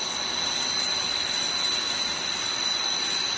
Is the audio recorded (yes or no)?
yes